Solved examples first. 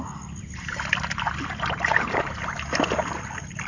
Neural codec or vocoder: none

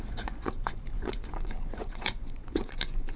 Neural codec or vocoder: vocoder, Vocos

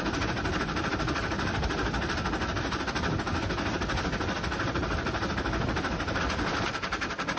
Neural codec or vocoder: none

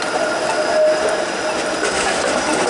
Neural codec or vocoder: none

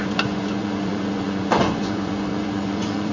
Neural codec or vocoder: vocoder, Vocos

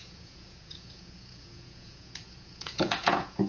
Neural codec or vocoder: vocoder, Vocos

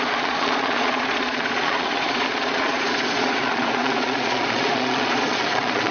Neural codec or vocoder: vocoder, Vocos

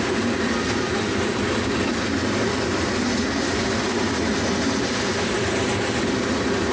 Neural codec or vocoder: none